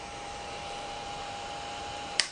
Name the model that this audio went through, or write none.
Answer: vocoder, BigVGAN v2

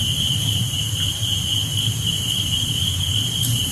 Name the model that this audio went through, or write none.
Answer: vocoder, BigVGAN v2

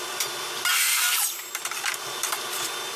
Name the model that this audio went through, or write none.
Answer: none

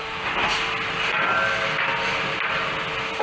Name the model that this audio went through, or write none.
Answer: none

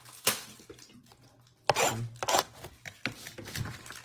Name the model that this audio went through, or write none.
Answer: none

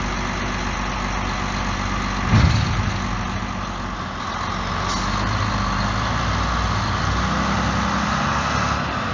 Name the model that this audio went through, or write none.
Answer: none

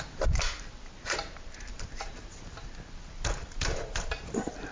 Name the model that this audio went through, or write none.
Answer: vocoder, BigVGAN v2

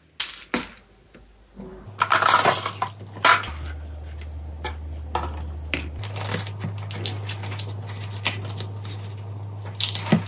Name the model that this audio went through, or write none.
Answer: none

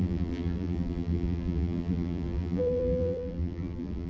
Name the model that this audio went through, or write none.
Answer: vocoder, BigVGAN v2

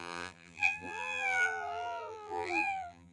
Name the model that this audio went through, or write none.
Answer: vocoder, BigVGAN v2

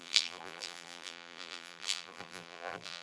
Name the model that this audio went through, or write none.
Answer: vocoder, BigVGAN v2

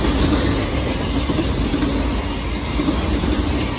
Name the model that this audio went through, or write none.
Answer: none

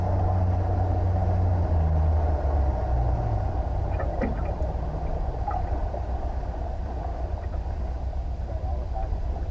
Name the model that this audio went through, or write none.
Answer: none